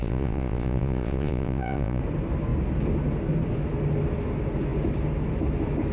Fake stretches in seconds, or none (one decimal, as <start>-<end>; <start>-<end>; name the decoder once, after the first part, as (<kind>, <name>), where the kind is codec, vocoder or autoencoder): 0.0-2.0 (vocoder, Vocos)